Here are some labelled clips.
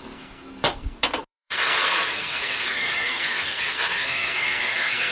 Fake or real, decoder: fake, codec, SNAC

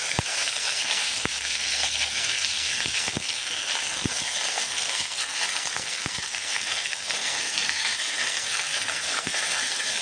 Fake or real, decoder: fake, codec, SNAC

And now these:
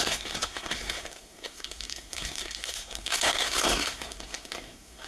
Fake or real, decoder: fake, codec, SNAC